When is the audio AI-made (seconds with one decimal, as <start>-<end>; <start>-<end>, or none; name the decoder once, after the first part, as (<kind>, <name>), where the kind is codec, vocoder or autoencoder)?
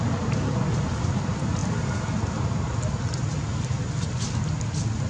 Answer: none